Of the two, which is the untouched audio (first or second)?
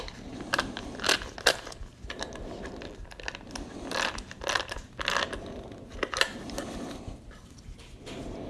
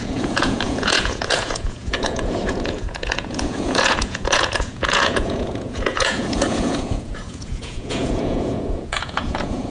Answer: first